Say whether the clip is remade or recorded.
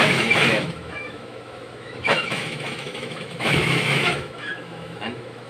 remade